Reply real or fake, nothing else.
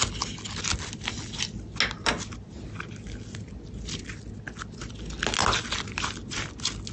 real